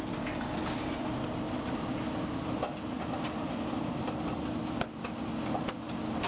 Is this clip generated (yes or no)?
no